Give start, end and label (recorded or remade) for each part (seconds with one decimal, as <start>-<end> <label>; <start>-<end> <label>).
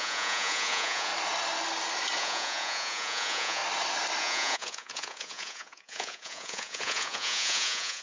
0.0-1.1 remade; 1.1-2.2 recorded; 2.2-3.6 remade; 3.6-4.2 recorded; 4.2-8.0 remade